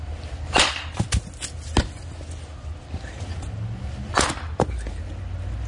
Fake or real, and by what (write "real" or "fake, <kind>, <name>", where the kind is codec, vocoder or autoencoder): real